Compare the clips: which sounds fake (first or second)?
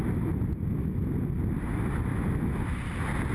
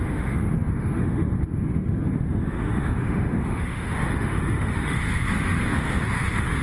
second